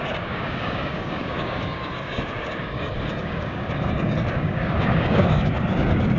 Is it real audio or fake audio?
fake